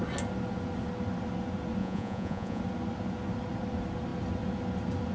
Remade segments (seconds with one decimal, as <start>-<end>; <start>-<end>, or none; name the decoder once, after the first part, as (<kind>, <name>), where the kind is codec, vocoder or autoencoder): 1.8-2.6 (vocoder, Vocos)